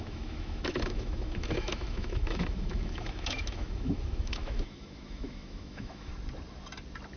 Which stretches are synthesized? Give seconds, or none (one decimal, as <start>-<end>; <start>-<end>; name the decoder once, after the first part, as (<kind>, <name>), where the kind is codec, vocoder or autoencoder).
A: 0.0-6.1 (autoencoder, DAC-VAE)